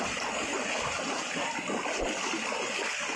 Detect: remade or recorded recorded